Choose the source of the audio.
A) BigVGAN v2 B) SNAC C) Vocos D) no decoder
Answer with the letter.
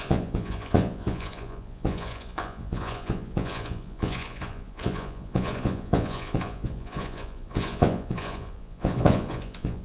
C